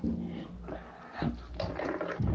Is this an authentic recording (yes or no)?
yes